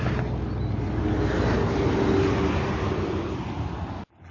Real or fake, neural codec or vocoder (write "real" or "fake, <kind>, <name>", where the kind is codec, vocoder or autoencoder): real